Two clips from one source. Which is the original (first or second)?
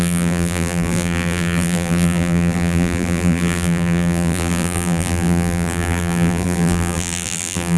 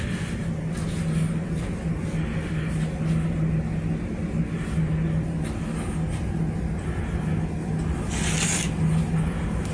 second